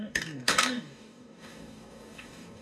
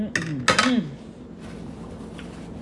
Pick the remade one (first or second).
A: first